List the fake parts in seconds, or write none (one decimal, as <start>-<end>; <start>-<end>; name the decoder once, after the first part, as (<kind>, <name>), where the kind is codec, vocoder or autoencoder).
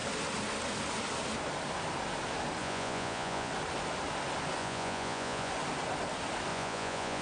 2.6-3.5 (vocoder, Vocos); 4.6-5.5; 6.5-7.2